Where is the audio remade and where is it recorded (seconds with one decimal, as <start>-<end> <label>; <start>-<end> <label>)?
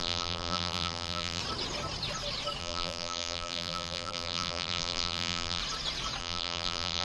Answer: 0.0-1.4 remade; 1.4-2.6 recorded; 2.6-5.6 remade; 5.6-6.2 recorded; 6.2-7.0 remade